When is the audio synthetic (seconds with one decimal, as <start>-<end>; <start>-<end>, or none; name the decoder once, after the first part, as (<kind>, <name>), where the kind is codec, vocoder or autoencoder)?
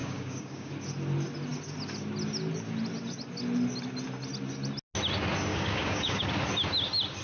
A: 0.0-0.7 (codec, DAC); 5.5-6.2